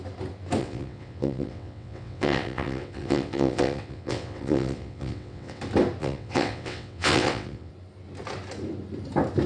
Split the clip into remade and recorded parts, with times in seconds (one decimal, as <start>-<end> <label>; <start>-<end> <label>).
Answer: 0.0-0.6 recorded; 0.6-5.6 remade; 5.6-6.0 recorded; 6.0-7.7 remade; 7.7-9.5 recorded